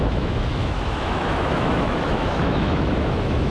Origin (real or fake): fake